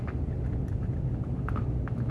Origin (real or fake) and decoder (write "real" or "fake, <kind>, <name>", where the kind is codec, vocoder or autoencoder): real